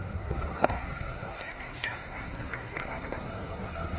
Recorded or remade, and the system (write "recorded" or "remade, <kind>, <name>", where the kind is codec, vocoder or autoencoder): remade, codec, SNAC